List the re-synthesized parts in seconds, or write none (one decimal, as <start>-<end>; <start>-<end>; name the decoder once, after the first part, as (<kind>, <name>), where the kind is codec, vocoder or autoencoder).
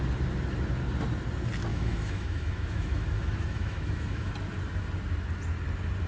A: 1.7-4.3 (autoencoder, DAC-VAE)